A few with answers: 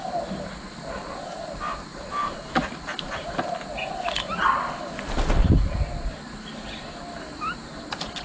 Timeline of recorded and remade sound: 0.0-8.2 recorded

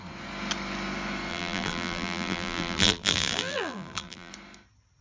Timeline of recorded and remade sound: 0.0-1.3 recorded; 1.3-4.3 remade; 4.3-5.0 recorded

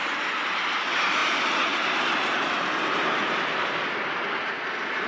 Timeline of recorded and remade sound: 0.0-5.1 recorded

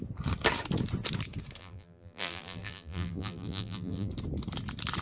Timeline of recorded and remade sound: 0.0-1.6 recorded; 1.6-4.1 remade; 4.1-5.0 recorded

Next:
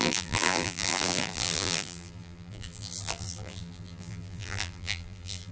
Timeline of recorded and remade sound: 0.0-5.5 remade

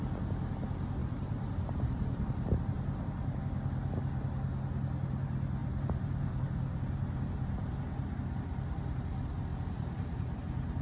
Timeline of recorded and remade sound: 0.0-1.0 recorded; 1.0-3.4 remade; 3.4-5.6 recorded; 5.6-7.8 remade; 7.8-9.5 recorded; 9.5-10.4 remade; 10.4-10.8 recorded

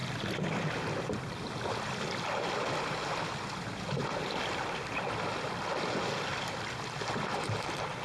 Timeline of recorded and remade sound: 0.0-2.7 remade; 2.7-4.0 recorded; 4.0-5.7 remade; 5.7-6.3 recorded; 6.3-7.1 remade; 7.1-8.0 recorded